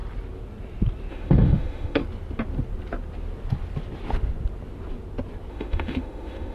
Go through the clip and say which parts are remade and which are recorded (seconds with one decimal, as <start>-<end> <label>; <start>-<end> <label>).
0.0-1.1 recorded; 1.1-2.0 remade; 2.0-5.5 recorded; 5.5-6.5 remade